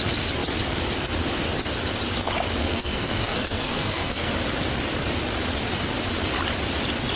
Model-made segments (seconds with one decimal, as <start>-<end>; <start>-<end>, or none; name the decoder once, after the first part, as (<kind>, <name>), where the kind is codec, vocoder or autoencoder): 2.6-4.3 (codec, SNAC)